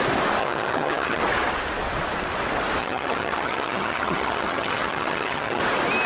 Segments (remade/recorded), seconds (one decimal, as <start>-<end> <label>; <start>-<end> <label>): 0.0-0.4 recorded; 0.4-1.2 remade; 1.2-2.8 recorded; 2.8-5.6 remade; 5.6-6.1 recorded